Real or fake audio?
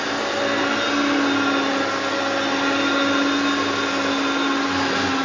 real